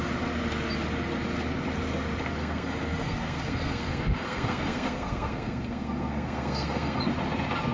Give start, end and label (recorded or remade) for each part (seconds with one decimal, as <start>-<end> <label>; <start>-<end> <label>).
0.0-2.4 recorded; 2.4-7.0 remade; 7.0-7.7 recorded